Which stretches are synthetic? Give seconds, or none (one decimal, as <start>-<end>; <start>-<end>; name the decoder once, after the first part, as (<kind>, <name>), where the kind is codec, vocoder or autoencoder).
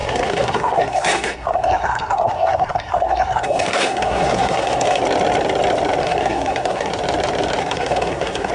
0.0-5.0 (codec, SNAC); 6.0-6.9; 7.6-8.5